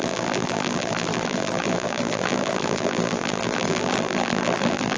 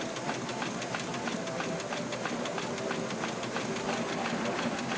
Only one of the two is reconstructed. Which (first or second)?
first